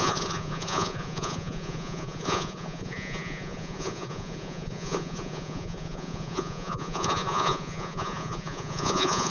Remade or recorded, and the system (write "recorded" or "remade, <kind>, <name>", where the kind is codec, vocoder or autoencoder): remade, vocoder, Vocos